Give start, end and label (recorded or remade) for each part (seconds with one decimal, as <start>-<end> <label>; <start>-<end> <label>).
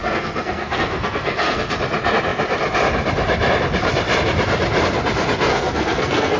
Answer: 0.0-1.7 remade; 1.7-5.5 recorded; 5.5-6.4 remade